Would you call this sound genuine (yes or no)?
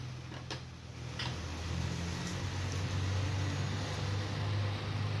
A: yes